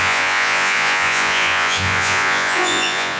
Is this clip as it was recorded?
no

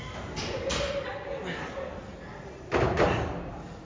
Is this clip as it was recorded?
yes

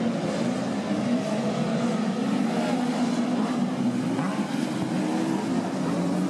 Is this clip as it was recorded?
yes